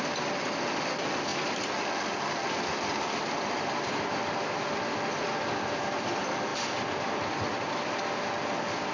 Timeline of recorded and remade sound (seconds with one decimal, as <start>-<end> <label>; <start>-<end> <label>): 0.0-8.9 recorded